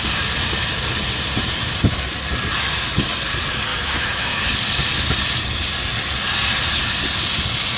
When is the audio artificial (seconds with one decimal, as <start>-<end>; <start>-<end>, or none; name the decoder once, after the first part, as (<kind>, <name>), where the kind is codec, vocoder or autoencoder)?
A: 3.7-4.5 (autoencoder, DAC-VAE)